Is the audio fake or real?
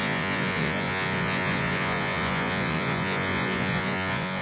fake